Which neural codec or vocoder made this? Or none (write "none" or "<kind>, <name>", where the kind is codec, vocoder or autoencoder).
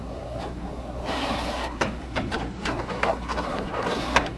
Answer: codec, SNAC